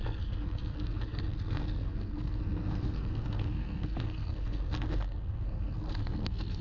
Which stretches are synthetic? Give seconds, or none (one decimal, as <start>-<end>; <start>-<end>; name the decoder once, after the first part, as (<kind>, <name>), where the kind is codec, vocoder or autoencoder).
0.0-6.6 (codec, SNAC)